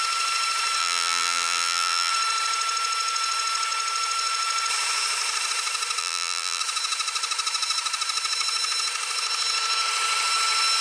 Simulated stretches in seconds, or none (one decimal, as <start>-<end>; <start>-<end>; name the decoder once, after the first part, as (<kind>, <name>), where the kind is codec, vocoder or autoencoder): 0.8-2.1 (vocoder, BigVGAN v2); 6.0-6.6